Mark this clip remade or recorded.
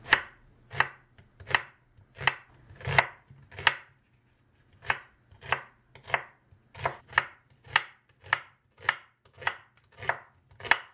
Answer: recorded